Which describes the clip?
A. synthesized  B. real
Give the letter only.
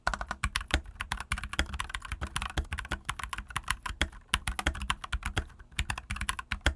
B